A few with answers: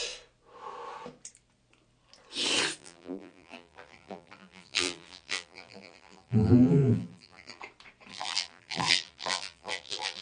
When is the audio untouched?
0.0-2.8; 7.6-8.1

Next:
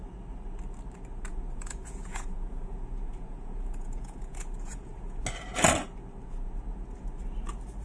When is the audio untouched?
0.0-1.3; 5.2-7.8

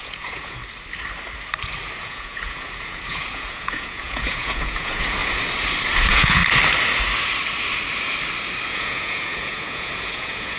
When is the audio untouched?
0.6-2.0; 5.2-6.0; 6.4-8.7

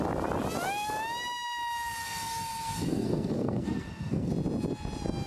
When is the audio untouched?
0.0-2.0; 4.3-5.3

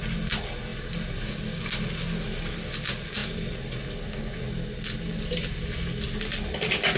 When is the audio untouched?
0.0-7.0

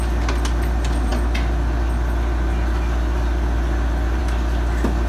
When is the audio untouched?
0.0-5.1

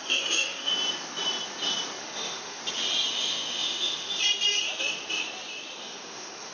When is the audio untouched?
0.7-2.0; 2.6-3.1; 4.1-5.8